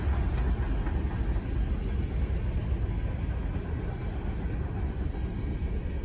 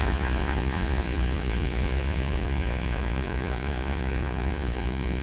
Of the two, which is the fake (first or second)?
second